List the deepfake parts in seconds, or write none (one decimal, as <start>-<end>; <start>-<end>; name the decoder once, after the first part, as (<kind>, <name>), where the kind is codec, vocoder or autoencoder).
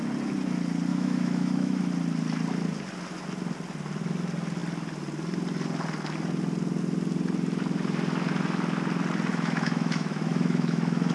0.9-1.8 (autoencoder, DAC-VAE); 9.3-11.1